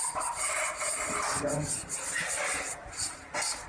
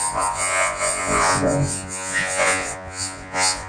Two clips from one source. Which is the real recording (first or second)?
first